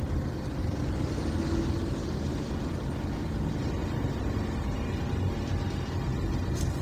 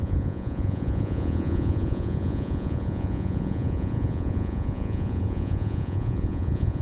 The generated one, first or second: second